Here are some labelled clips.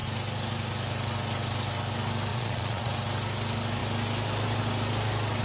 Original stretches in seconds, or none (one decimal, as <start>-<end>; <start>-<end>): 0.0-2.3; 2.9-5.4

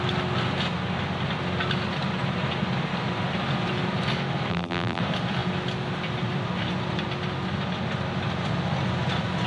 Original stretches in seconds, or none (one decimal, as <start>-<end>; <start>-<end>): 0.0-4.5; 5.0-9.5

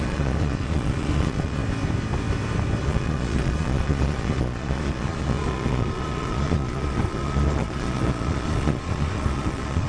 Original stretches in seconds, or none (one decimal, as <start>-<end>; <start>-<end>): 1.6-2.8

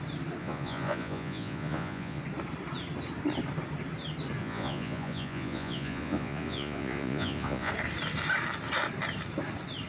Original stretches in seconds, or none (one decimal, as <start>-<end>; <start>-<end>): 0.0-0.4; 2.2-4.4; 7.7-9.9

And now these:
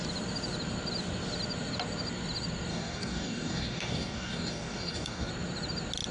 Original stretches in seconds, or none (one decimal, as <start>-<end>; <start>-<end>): 0.0-2.7; 5.3-6.1

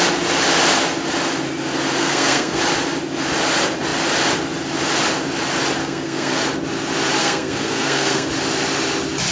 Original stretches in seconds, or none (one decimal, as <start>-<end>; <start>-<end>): 0.0-2.0; 2.6-5.8; 6.4-7.2; 8.3-9.3

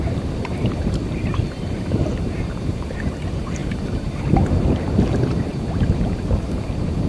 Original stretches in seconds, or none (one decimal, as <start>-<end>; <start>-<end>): none